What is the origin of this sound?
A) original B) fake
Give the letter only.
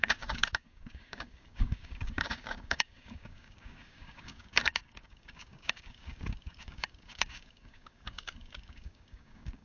B